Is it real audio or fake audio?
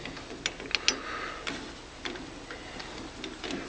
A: real